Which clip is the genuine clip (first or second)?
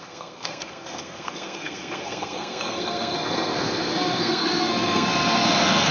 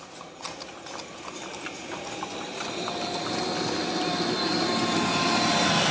second